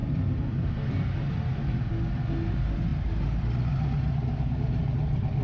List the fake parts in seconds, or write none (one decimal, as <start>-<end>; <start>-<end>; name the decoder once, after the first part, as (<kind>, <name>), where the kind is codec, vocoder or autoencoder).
none